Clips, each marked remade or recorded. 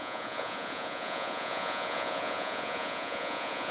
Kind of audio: remade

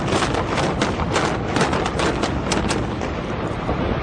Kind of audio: recorded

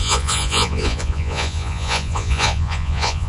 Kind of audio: remade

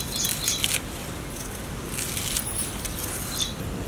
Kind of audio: recorded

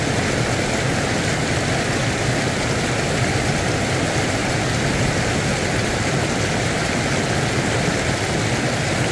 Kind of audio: recorded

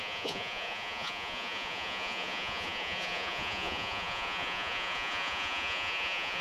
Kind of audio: remade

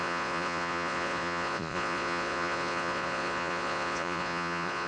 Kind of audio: remade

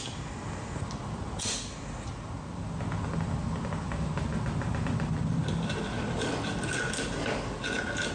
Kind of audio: recorded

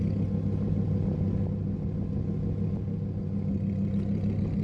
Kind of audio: recorded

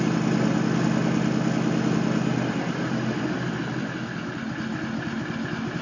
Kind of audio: recorded